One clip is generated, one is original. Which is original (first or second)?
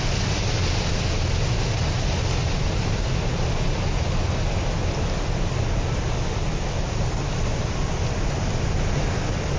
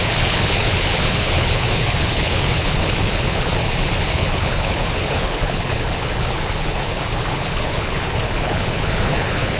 first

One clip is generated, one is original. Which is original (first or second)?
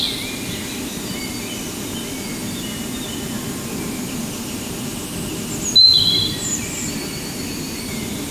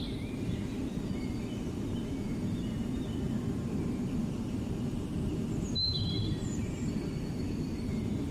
first